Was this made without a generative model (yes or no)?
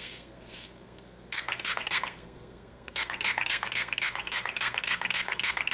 no